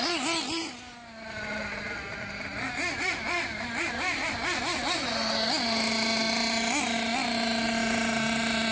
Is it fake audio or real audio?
real